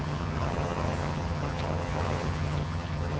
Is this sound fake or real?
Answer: fake